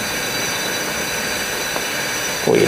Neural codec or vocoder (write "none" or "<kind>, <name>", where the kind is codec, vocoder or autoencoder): none